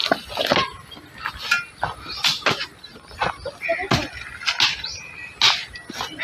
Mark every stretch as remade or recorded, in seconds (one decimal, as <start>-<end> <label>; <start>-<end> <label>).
0.0-6.2 recorded